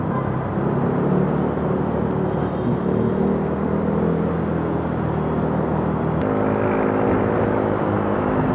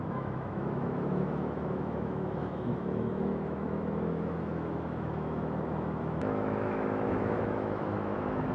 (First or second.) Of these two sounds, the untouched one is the first